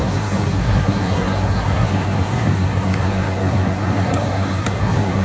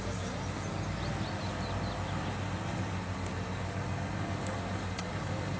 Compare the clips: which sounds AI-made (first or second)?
first